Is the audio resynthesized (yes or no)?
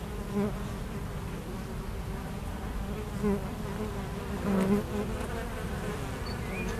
no